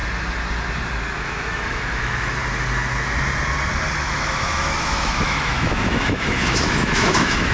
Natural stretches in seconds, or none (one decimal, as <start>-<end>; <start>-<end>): 0.0-1.2; 2.4-4.0